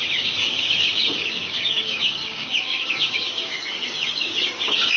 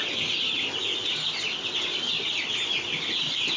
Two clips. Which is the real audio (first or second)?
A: second